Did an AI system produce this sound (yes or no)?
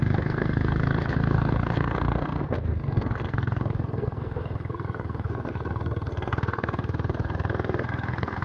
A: yes